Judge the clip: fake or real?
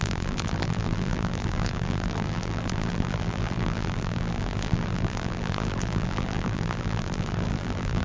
fake